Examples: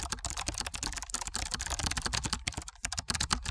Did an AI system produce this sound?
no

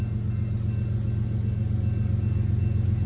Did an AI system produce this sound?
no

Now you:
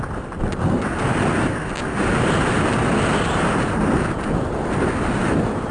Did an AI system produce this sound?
no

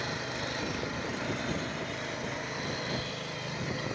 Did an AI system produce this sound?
no